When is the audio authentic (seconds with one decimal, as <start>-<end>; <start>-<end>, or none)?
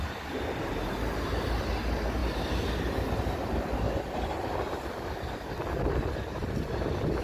0.0-7.2